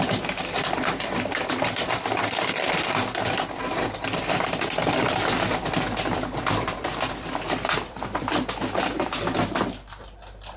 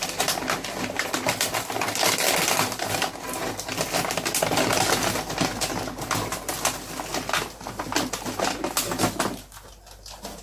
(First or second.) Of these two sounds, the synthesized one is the first